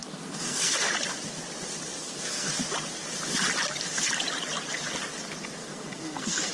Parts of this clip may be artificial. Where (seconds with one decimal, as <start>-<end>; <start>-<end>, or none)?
0.0-0.9; 2.0-2.5; 5.6-6.5